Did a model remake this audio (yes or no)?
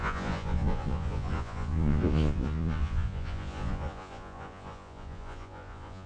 yes